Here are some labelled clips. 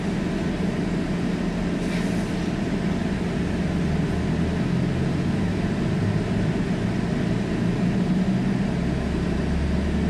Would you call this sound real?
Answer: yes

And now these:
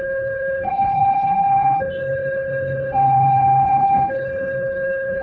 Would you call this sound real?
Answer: no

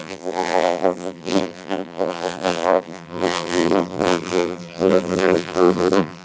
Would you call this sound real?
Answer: no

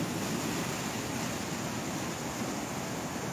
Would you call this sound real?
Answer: yes